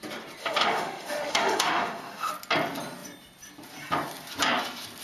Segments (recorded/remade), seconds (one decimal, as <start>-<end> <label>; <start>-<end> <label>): 0.0-0.4 recorded; 0.4-2.3 remade; 2.3-5.0 recorded